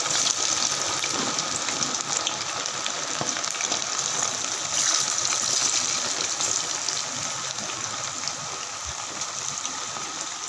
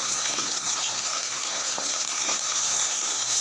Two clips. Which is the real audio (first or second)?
first